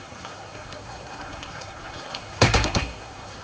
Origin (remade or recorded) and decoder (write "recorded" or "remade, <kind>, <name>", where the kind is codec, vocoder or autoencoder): remade, codec, SNAC